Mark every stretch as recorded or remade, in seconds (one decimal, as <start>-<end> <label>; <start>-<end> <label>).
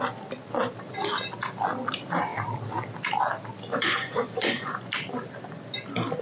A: 0.0-3.7 recorded; 3.7-4.9 remade; 4.9-6.2 recorded